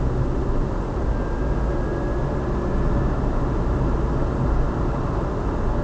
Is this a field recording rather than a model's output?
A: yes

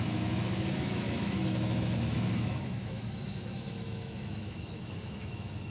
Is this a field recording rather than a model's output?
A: no